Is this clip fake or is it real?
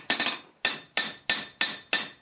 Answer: real